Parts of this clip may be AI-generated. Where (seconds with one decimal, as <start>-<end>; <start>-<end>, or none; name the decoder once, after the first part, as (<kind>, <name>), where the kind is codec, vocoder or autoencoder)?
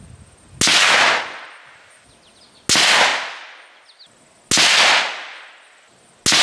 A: none